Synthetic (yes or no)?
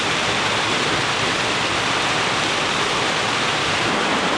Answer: yes